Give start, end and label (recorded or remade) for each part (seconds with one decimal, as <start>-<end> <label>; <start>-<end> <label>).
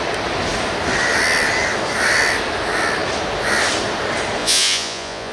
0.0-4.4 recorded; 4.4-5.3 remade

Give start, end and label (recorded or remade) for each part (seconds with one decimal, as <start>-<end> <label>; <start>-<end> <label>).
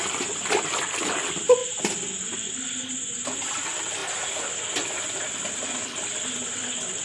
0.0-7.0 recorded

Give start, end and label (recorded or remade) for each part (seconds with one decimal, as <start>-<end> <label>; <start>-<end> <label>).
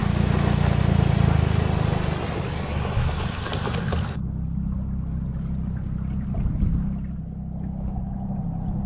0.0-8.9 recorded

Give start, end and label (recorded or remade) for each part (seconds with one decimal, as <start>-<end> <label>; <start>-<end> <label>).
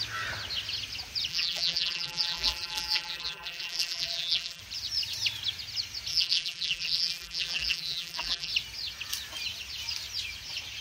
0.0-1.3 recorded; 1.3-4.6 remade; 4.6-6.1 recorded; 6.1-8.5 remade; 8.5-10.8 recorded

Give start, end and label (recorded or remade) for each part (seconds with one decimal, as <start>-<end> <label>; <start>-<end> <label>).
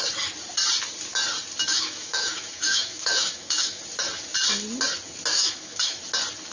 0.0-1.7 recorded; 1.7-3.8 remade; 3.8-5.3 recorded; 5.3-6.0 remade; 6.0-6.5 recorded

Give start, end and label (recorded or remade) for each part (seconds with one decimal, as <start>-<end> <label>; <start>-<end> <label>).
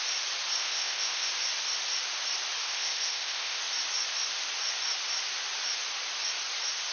0.0-0.6 recorded; 0.6-1.3 remade; 1.3-2.6 recorded; 2.6-3.6 remade; 3.6-6.9 recorded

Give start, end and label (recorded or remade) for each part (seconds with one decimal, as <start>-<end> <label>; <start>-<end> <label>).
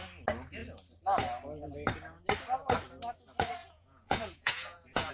0.0-3.6 recorded; 3.6-5.1 remade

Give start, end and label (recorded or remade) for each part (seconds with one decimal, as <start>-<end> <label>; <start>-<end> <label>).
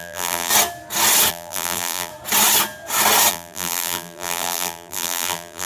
0.0-0.5 remade; 0.5-1.3 recorded; 1.3-2.1 remade; 2.1-3.3 recorded; 3.3-5.7 remade